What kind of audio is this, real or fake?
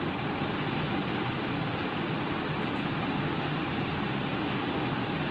real